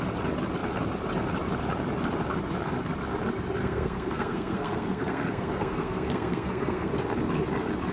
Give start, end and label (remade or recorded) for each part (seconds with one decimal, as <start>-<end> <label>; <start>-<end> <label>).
0.0-3.6 recorded; 3.6-6.9 remade; 6.9-7.9 recorded

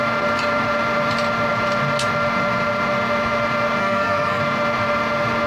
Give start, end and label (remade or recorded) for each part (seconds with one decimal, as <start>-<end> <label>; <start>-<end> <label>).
0.0-3.8 recorded; 3.8-4.4 remade; 4.4-5.5 recorded

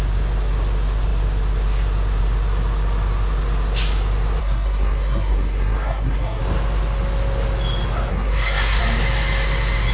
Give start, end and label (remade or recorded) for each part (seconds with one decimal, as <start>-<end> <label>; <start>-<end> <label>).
0.0-4.4 recorded; 4.4-6.4 remade; 6.4-8.1 recorded; 8.1-8.8 remade; 8.8-9.9 recorded

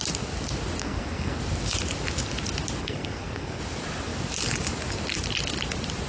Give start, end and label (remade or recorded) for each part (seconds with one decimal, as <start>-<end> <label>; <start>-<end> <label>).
0.0-0.8 recorded; 0.8-1.4 remade; 1.4-2.8 recorded; 2.8-3.6 remade; 3.6-6.1 recorded